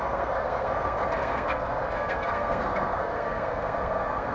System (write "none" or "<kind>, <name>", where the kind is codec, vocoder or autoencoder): codec, SNAC